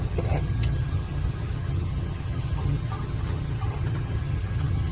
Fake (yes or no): yes